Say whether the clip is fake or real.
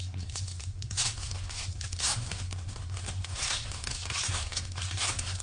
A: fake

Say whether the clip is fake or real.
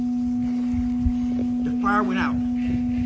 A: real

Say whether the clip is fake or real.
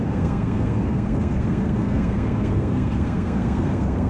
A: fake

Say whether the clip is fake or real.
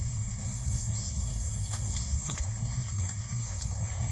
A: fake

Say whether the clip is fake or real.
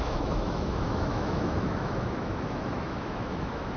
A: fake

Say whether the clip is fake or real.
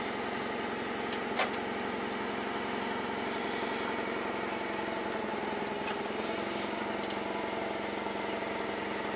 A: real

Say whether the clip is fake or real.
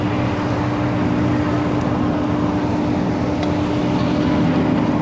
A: real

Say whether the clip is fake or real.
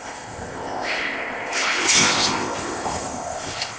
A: fake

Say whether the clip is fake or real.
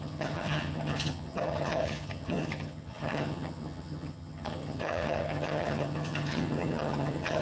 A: fake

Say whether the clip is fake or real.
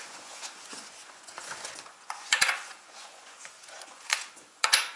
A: fake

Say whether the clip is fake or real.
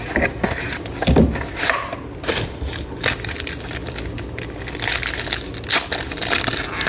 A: real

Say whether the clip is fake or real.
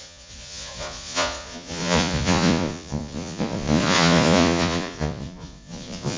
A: fake